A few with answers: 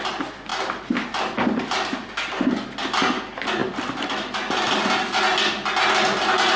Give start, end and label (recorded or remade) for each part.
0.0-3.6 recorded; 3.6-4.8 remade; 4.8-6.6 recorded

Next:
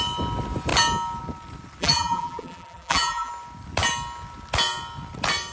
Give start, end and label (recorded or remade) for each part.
0.0-1.8 recorded; 1.8-3.3 remade; 3.3-5.5 recorded